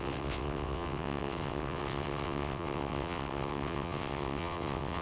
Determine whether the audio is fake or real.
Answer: fake